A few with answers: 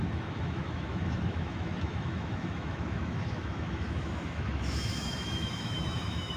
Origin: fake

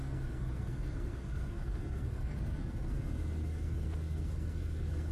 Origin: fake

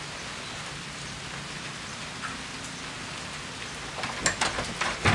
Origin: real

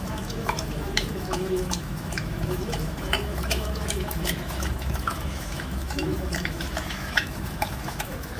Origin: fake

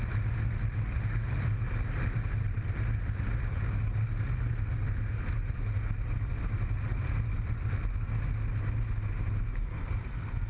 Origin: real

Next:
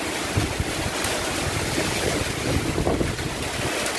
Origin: real